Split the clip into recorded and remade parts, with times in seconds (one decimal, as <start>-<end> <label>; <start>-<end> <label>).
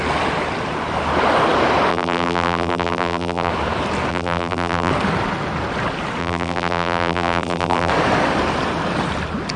0.0-1.9 recorded; 1.9-3.5 remade; 3.5-4.1 recorded; 4.1-4.9 remade; 4.9-6.2 recorded; 6.2-7.9 remade; 7.9-9.6 recorded